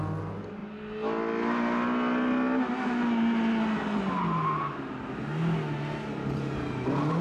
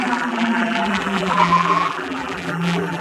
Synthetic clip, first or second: second